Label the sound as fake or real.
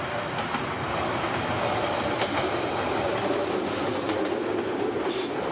real